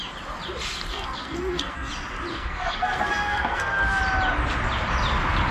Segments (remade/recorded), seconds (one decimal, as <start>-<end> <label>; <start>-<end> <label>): 0.0-0.9 recorded; 0.9-1.9 remade; 1.9-2.3 recorded; 2.3-4.0 remade; 4.0-5.5 recorded